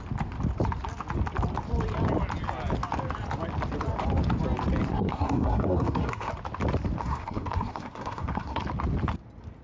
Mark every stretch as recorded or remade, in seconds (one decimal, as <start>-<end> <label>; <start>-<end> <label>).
0.0-4.9 recorded; 4.9-6.3 remade; 6.3-7.0 recorded; 7.0-8.6 remade; 8.6-9.6 recorded

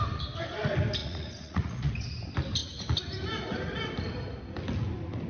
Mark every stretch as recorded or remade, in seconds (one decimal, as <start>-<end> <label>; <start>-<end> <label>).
0.0-1.0 recorded; 1.0-1.9 remade; 1.9-5.3 recorded

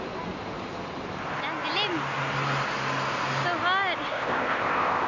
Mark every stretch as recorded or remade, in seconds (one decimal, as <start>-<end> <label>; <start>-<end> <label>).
0.0-4.1 recorded; 4.1-5.1 remade

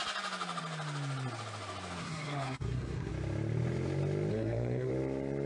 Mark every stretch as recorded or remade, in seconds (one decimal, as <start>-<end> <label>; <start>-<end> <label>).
0.0-2.0 recorded; 2.0-3.1 remade; 3.1-4.3 recorded; 4.3-4.9 remade; 4.9-5.5 recorded

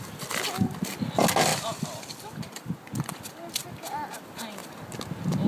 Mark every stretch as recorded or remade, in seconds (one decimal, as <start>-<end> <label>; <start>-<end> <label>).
0.0-1.5 recorded; 1.5-3.7 remade; 3.7-5.5 recorded

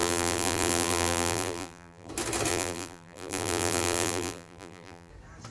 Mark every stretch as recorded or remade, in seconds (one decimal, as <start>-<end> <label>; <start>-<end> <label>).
0.0-2.1 remade; 2.1-2.5 recorded; 2.5-5.1 remade; 5.1-5.5 recorded

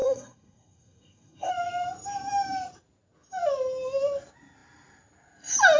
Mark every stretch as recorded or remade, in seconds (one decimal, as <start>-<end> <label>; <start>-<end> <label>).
0.0-1.5 remade; 1.5-5.8 recorded